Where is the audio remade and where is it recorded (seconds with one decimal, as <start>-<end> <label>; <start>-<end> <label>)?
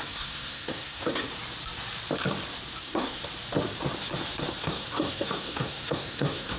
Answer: 0.0-1.2 remade; 1.2-2.8 recorded; 2.8-3.2 remade; 3.2-4.6 recorded; 4.6-6.6 remade